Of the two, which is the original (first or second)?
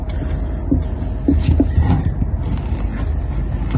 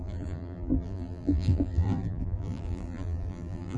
first